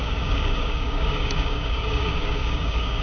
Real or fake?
fake